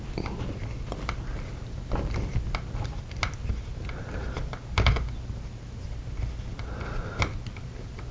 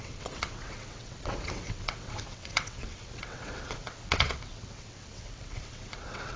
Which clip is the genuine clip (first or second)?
first